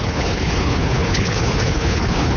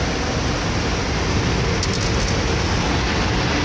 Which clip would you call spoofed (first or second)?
first